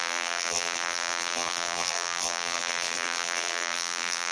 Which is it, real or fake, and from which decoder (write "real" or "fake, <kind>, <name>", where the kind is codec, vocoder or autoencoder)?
fake, vocoder, BigVGAN v2